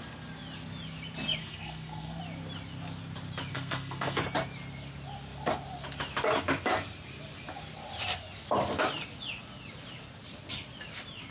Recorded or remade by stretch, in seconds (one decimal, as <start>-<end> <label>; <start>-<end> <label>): 0.0-1.4 recorded; 1.4-2.2 remade; 2.2-3.5 recorded; 3.5-4.2 remade; 4.2-11.3 recorded